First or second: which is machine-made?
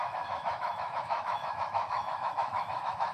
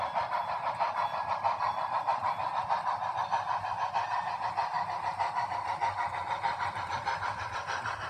first